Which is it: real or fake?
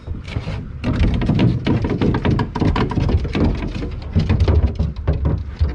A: real